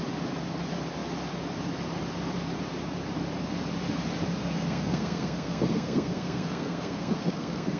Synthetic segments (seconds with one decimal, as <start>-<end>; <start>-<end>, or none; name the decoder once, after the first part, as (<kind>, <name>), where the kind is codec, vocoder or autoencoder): 4.4-7.8 (codec, SNAC)